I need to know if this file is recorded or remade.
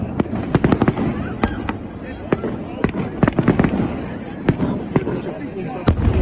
recorded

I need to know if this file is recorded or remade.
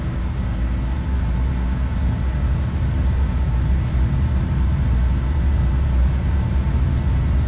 recorded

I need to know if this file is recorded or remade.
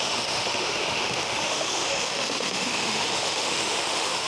remade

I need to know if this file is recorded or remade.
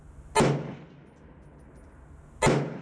recorded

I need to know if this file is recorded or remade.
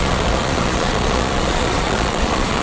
remade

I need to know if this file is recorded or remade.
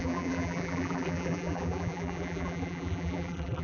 remade